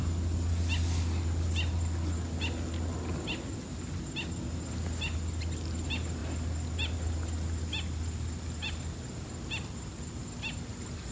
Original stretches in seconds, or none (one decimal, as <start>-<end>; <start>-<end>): 0.0-11.1